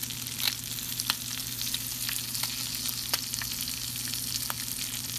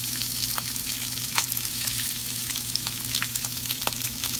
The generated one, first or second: second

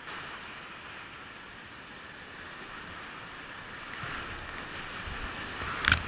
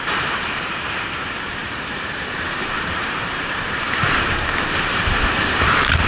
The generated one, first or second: second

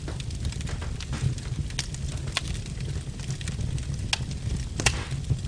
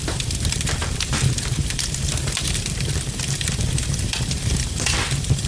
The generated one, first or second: second